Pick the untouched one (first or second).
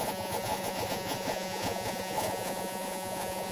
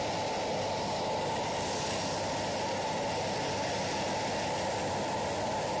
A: second